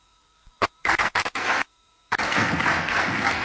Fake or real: fake